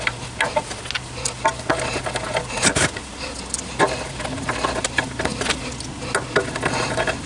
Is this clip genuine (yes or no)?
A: yes